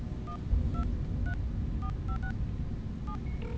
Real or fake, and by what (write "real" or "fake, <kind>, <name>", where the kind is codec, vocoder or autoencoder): real